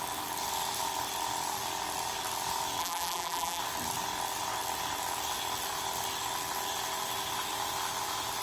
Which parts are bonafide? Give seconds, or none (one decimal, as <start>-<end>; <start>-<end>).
0.0-2.8; 3.6-8.4